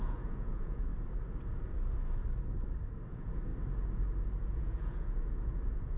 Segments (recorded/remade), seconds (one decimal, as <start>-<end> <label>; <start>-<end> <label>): 0.0-0.9 remade; 0.9-3.1 recorded; 3.1-3.5 remade; 3.5-4.4 recorded; 4.4-6.0 remade